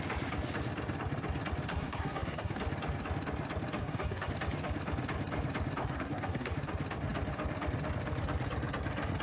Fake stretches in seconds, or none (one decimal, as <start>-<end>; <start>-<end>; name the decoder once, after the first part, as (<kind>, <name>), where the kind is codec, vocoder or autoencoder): 1.7-2.6 (codec, SNAC); 3.8-4.3; 5.8-6.5